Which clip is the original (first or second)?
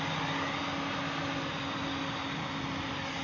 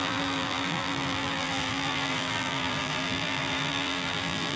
first